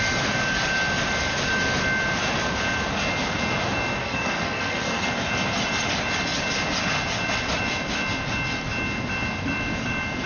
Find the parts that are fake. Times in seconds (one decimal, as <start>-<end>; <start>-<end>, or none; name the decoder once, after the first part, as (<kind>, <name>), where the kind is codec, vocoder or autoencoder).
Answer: 4.0-5.1 (codec, SNAC)